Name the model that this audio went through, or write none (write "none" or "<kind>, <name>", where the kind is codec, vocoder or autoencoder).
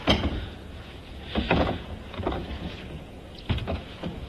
vocoder, Vocos